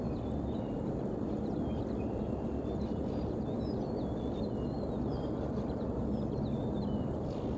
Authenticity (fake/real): real